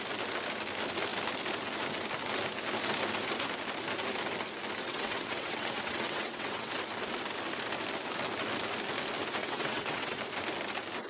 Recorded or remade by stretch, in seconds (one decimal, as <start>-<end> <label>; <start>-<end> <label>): 0.0-4.8 recorded; 4.8-6.7 remade; 6.7-9.4 recorded; 9.4-10.2 remade; 10.2-11.1 recorded